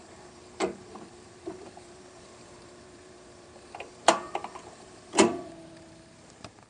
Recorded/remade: remade